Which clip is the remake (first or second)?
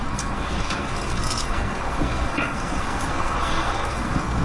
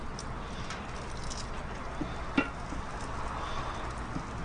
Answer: first